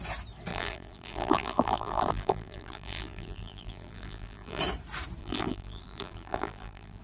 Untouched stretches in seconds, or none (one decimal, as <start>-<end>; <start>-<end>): 0.0-0.5; 4.6-5.2